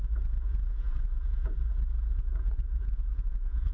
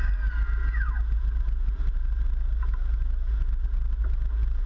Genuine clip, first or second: second